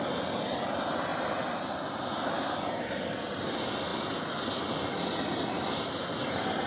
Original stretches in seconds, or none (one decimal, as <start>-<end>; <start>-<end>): 0.0-6.7